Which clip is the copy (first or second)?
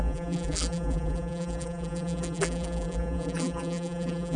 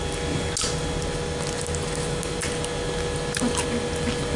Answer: first